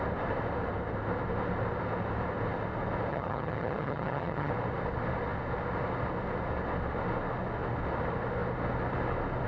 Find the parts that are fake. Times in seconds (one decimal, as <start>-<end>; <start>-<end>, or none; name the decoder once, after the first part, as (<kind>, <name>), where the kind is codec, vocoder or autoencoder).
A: 3.1-4.5 (vocoder, HiFi-GAN)